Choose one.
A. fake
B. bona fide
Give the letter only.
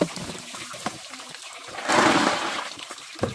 A